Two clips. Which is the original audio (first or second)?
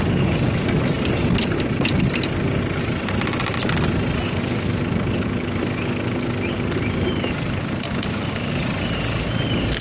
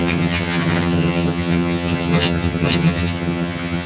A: first